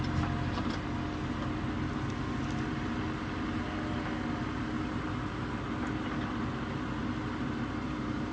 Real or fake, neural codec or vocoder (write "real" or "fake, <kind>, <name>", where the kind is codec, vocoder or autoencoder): real